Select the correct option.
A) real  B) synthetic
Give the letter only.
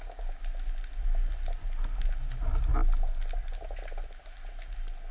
A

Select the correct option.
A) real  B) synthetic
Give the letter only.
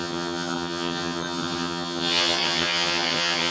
B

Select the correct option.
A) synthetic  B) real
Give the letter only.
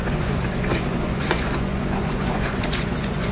A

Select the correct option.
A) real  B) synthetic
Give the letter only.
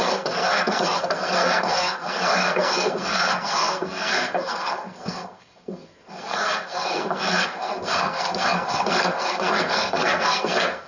B